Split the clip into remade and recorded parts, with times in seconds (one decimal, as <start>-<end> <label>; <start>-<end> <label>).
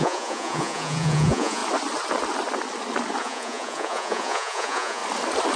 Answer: 0.0-1.6 remade; 1.6-3.2 recorded; 3.2-5.0 remade; 5.0-5.6 recorded